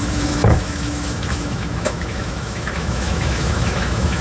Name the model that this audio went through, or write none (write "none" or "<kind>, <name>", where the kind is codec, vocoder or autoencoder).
autoencoder, DAC-VAE